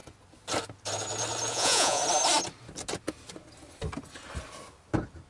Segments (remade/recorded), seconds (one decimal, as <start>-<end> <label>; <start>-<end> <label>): 0.0-1.5 recorded; 1.5-2.0 remade; 2.0-5.3 recorded

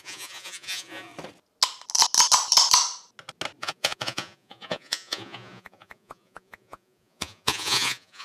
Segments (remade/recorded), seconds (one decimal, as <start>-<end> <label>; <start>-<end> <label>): 0.0-1.1 remade; 1.1-3.6 recorded; 3.6-8.2 remade

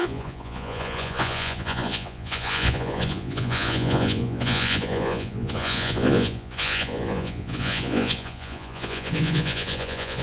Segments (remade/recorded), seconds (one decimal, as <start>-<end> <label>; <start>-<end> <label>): 0.0-10.2 remade